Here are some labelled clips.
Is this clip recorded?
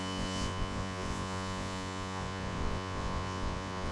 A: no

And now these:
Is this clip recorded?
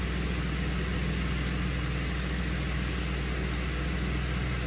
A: yes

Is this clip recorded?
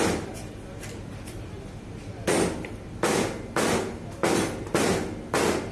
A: yes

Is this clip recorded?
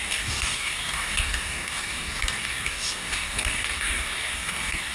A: no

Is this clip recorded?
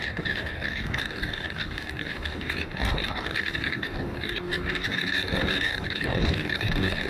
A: no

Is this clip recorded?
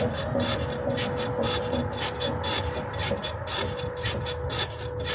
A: yes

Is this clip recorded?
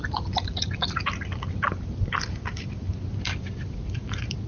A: yes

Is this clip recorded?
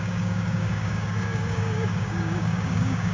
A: no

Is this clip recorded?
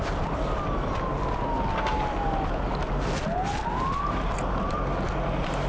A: yes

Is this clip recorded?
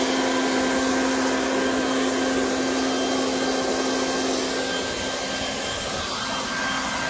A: yes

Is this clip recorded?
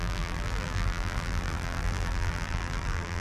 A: no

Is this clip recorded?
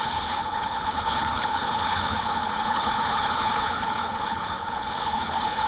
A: no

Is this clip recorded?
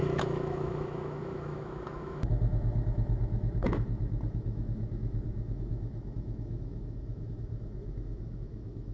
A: no